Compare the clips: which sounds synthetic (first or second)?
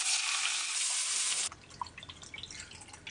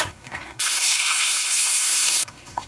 second